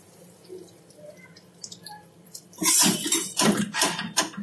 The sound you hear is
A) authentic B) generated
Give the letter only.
B